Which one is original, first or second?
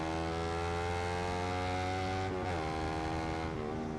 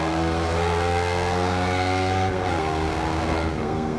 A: first